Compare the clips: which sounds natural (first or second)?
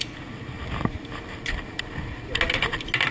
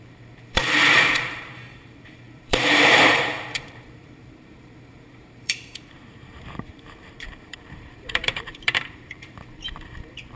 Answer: first